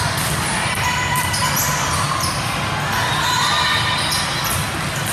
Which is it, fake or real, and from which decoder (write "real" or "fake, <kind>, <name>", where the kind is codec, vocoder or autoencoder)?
real